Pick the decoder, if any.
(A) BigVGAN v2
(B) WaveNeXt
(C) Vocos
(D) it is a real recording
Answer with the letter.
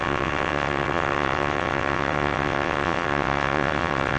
B